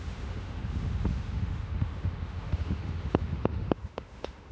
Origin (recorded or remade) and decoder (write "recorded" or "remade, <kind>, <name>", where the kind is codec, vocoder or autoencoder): remade, autoencoder, DAC-VAE